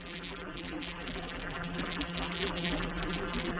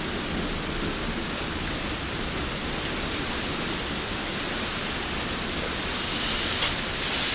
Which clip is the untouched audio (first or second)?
second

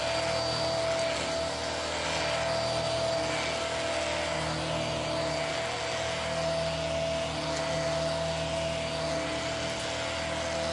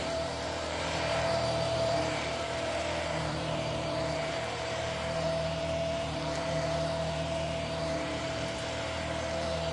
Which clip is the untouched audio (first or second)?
first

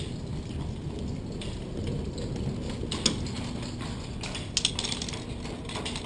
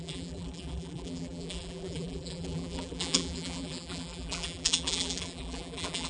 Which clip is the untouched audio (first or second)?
first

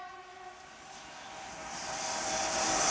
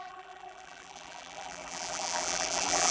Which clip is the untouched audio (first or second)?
first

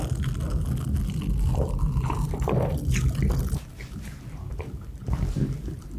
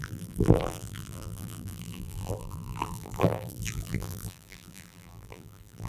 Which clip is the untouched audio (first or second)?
first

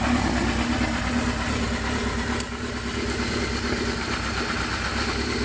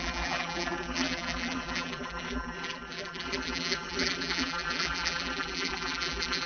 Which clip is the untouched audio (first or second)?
first